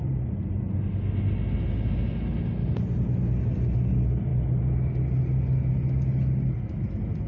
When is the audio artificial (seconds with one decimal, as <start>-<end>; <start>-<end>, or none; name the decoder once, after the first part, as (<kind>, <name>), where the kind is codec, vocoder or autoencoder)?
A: none

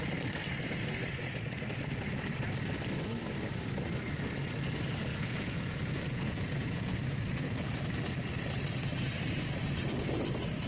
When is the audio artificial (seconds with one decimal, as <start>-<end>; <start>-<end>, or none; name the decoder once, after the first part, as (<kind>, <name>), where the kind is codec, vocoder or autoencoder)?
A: 5.1-7.7 (vocoder, Vocos)